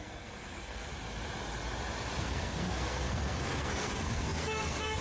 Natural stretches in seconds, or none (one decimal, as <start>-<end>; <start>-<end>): 0.9-2.2